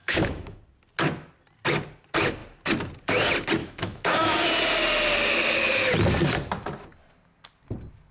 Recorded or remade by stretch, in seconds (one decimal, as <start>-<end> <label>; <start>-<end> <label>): 0.0-0.6 remade; 0.6-3.6 recorded; 3.6-4.3 remade; 4.3-8.1 recorded